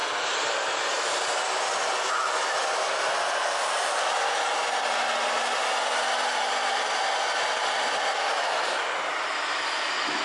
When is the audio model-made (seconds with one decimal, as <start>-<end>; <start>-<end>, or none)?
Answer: none